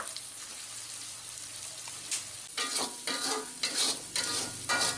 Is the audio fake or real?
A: real